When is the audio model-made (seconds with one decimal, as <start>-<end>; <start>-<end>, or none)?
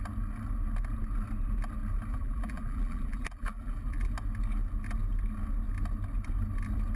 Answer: 2.1-4.1